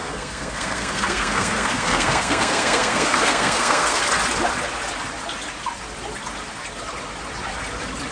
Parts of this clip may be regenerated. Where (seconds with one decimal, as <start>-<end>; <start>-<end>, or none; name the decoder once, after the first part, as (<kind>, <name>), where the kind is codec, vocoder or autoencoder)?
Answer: 0.0-4.0 (codec, SNAC)